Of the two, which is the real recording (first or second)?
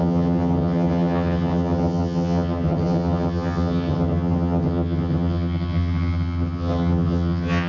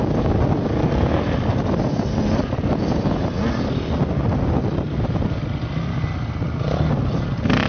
second